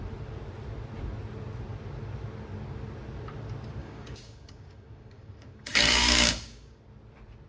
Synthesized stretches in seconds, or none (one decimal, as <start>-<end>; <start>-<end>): 3.8-6.8